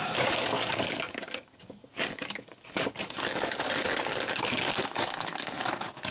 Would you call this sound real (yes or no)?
no